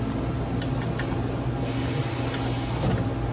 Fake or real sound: real